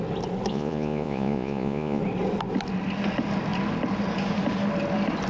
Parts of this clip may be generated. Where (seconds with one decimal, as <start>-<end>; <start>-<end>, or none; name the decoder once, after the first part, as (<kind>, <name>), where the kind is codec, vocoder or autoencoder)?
0.5-2.0 (vocoder, Vocos)

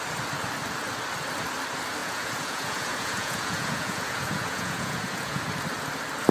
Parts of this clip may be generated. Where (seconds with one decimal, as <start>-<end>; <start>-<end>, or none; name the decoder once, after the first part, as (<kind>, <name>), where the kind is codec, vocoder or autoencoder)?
2.0-5.4 (vocoder, Vocos)

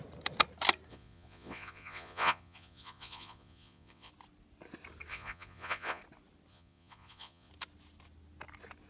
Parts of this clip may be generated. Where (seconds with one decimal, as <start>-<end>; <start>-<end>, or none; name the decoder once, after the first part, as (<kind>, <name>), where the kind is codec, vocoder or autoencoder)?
0.9-4.1 (vocoder, Vocos); 5.1-6.0; 6.5-7.5